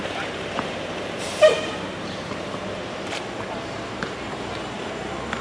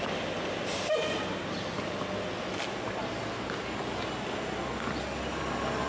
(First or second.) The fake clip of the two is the first